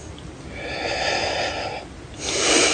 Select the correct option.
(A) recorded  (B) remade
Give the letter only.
A